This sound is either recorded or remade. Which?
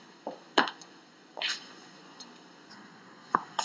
remade